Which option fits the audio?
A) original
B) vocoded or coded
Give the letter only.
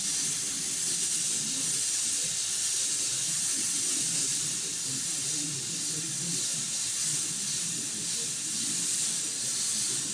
A